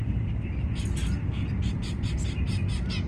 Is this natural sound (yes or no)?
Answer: yes